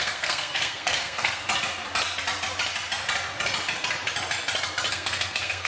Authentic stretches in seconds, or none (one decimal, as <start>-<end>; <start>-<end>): 1.5-4.9